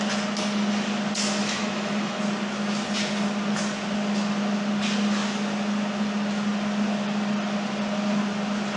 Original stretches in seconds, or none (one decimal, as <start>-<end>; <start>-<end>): 0.0-1.4; 2.2-8.8